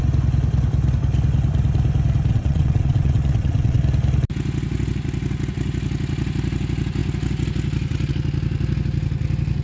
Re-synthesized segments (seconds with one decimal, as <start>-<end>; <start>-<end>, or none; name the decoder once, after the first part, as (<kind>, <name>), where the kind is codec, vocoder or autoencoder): 2.3-3.8 (vocoder, WaveNeXt)

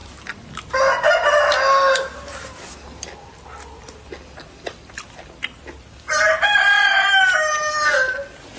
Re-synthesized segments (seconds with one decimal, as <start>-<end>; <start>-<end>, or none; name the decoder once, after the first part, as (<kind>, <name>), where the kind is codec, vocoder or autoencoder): none

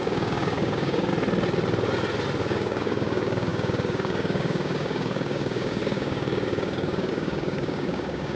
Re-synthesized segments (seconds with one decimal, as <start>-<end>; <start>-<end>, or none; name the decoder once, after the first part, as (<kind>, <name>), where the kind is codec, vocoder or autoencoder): 0.0-1.1 (codec, DAC); 2.4-8.4

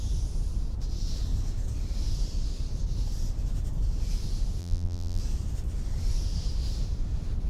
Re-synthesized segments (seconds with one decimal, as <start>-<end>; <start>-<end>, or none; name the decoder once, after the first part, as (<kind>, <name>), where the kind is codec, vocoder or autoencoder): 4.6-5.2 (vocoder, BigVGAN v2)

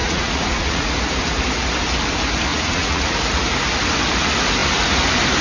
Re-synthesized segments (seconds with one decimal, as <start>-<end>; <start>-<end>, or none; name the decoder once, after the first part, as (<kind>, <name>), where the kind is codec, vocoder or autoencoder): 0.0-0.9 (vocoder, Vocos); 2.5-3.1

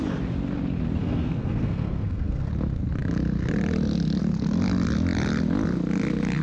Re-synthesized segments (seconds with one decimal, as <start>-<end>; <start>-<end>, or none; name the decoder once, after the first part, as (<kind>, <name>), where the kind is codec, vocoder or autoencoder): 1.0-2.5 (codec, SNAC)

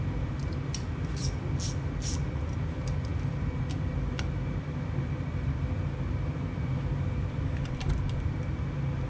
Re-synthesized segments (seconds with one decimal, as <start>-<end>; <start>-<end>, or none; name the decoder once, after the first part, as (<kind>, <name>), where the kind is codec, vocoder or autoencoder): none